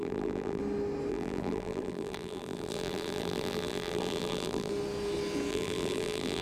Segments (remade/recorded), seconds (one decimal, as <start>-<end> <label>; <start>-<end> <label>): 0.0-0.6 remade; 0.6-1.1 recorded; 1.1-4.7 remade; 4.7-5.5 recorded; 5.5-6.4 remade